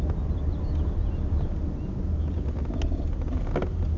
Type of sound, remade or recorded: recorded